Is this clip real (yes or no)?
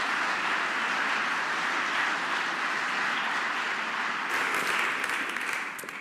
yes